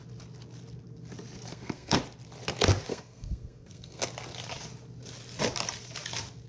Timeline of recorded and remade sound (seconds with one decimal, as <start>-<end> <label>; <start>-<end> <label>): 0.0-1.5 recorded; 1.5-2.0 remade; 2.0-2.9 recorded; 2.9-4.0 remade; 4.0-6.5 recorded